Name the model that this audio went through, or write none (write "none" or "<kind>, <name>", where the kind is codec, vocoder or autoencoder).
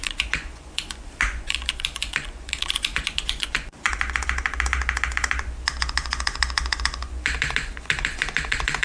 vocoder, Vocos